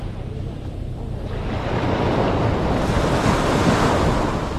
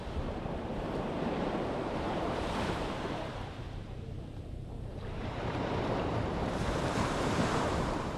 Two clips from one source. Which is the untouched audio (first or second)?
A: first